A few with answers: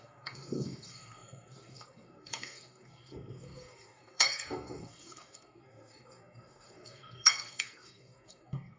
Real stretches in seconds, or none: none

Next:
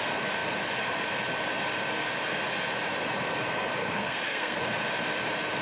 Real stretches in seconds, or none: 0.0-3.8; 4.6-5.6

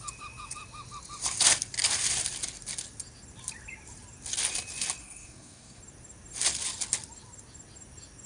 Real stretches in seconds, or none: 0.0-5.0; 5.8-8.3

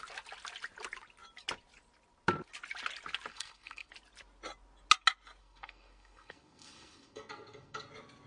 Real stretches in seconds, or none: 0.0-3.3; 3.9-5.4; 7.9-8.3

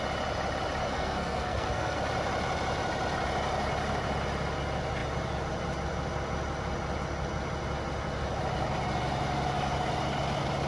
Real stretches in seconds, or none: 0.0-0.8; 2.0-10.7

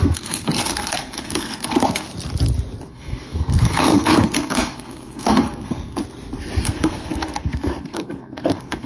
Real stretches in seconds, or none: 2.1-2.9; 6.0-6.6

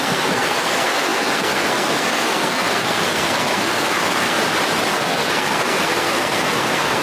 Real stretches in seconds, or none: 4.4-4.9